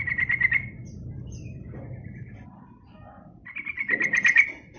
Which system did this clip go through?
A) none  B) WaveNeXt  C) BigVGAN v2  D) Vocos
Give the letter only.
A